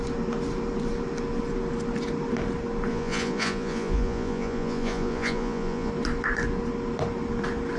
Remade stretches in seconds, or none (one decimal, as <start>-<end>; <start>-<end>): 2.9-5.9